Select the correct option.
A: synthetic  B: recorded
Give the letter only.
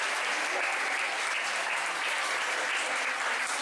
B